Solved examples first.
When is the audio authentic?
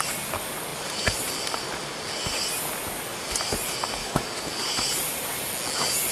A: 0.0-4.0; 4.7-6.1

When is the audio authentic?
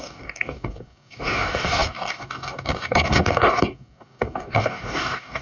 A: none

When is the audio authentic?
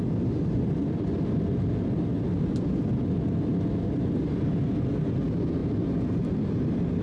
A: 0.0-7.0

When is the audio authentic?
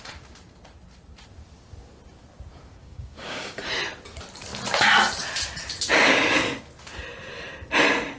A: 0.0-2.7; 3.6-8.2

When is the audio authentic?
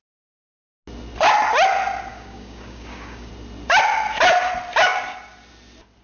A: 0.0-2.1; 3.3-6.0